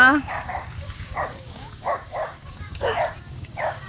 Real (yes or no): no